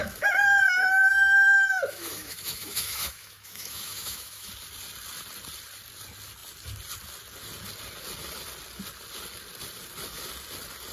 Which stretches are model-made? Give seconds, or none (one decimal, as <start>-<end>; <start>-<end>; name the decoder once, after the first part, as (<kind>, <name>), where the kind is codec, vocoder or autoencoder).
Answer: 0.0-4.5 (autoencoder, DAC-VAE)